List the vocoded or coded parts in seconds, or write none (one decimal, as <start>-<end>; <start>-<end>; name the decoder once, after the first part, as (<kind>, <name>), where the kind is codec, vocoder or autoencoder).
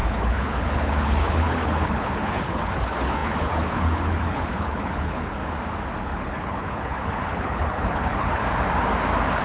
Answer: 0.0-5.4 (codec, HILCodec); 6.0-8.4